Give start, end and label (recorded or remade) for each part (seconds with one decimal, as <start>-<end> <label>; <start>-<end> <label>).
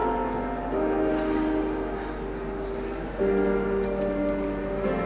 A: 0.0-5.1 recorded